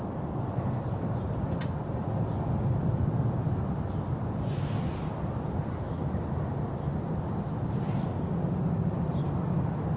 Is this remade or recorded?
recorded